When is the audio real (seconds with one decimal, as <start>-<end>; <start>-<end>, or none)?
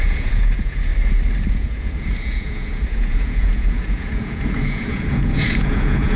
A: 0.9-1.5